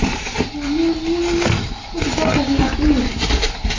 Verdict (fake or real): real